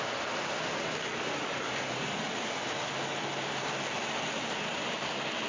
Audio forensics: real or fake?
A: real